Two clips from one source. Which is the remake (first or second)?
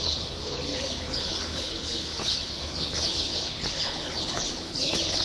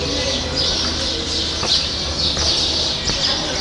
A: first